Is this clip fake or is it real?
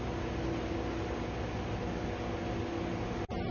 real